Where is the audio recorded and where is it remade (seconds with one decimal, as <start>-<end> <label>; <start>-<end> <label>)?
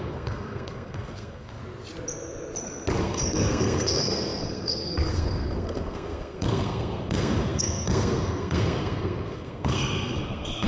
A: 0.0-1.6 remade; 1.6-3.0 recorded; 3.0-10.7 remade